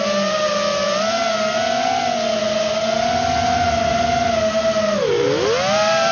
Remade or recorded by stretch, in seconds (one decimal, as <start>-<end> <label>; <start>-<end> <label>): 0.0-6.1 recorded